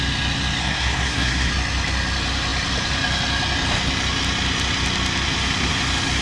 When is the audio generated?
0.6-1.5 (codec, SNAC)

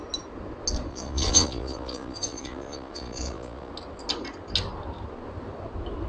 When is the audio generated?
0.9-3.7 (vocoder, Vocos)

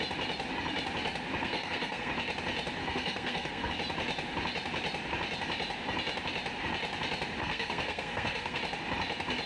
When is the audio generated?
1.4-2.1 (codec, SNAC); 2.8-3.7; 7.4-8.6

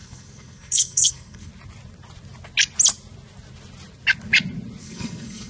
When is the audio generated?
0.0-1.5 (codec, SNAC); 4.8-5.5

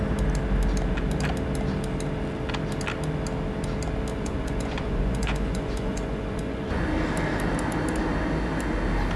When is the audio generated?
4.1-6.9 (vocoder, Vocos)

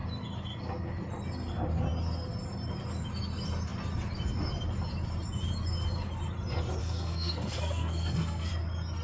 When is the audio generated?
6.8-8.5 (codec, SNAC)